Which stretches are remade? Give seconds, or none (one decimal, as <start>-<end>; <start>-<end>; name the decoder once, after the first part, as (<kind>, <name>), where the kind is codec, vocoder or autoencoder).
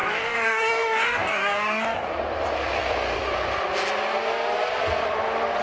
0.0-1.8 (codec, DAC)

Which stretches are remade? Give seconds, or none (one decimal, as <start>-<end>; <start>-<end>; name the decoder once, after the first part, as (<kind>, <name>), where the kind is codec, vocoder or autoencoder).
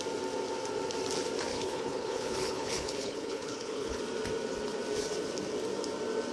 1.5-4.0 (codec, HILCodec)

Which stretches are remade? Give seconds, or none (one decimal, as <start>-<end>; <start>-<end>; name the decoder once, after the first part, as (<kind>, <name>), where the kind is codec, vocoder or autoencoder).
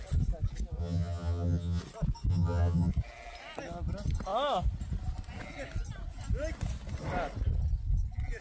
0.8-1.8 (vocoder, HiFi-GAN); 2.3-2.9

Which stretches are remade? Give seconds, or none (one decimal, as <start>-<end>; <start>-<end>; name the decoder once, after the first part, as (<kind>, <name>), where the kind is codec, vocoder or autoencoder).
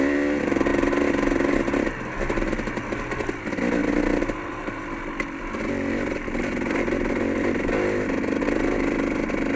none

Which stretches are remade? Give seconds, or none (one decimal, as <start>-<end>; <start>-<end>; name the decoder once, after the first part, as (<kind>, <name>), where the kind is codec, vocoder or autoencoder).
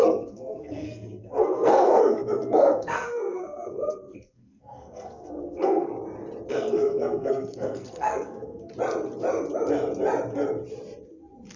0.0-5.9 (codec, SNAC); 6.5-8.7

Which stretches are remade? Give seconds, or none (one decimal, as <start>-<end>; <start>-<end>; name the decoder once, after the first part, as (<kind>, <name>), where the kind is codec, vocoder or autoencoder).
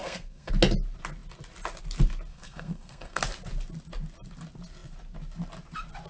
0.0-0.5 (codec, SNAC); 2.3-3.2